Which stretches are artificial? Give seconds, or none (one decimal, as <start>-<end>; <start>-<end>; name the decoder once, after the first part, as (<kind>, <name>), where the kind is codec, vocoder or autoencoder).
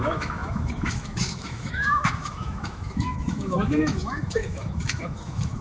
0.0-5.6 (autoencoder, DAC-VAE)